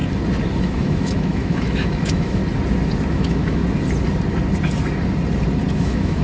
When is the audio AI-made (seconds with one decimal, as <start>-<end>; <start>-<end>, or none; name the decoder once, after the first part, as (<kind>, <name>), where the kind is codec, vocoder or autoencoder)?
0.6-2.4 (autoencoder, DAC-VAE); 3.1-3.6; 5.7-6.2